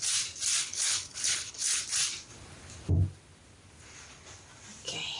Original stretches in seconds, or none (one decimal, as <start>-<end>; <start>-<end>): 0.0-0.6; 1.8-5.2